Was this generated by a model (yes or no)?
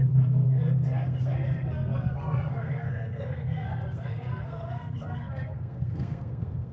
yes